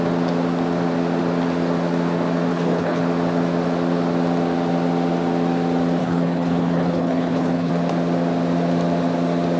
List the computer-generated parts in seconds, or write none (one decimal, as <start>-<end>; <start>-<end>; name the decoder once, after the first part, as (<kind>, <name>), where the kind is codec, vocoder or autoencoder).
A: 2.5-3.0 (codec, HILCodec); 6.0-7.7